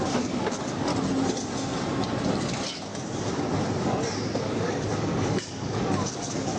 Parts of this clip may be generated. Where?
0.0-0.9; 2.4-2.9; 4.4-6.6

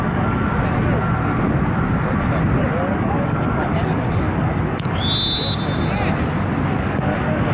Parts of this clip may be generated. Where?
0.0-0.5; 2.9-5.0; 6.8-7.5

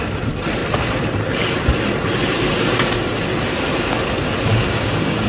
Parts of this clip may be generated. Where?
4.5-5.3

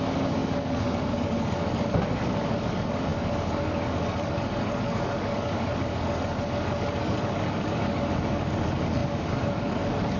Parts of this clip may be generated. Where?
0.0-10.2

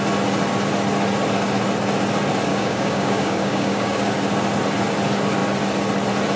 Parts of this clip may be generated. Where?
2.5-4.1

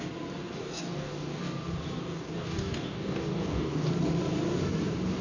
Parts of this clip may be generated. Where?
0.6-1.4; 2.0-3.9